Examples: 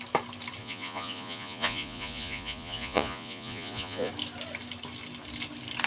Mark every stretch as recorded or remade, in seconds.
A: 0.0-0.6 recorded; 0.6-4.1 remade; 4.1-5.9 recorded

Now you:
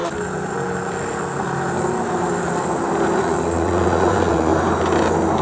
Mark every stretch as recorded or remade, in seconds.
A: 0.0-3.2 recorded; 3.2-4.5 remade; 4.5-5.4 recorded

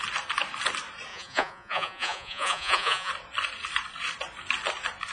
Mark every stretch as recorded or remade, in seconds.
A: 0.0-1.1 recorded; 1.1-3.1 remade; 3.1-5.1 recorded